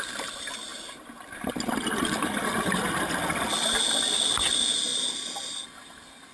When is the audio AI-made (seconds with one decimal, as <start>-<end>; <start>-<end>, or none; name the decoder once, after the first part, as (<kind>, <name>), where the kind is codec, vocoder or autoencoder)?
none